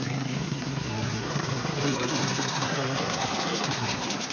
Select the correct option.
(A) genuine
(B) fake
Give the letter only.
B